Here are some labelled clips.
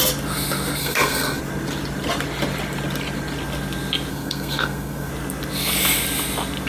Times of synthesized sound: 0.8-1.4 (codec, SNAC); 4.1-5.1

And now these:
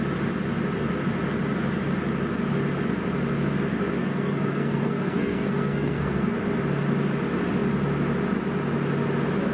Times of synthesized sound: 4.0-6.4 (codec, SNAC)